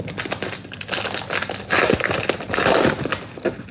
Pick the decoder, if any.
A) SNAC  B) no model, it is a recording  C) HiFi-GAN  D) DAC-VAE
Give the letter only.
B